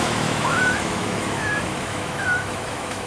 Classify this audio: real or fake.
fake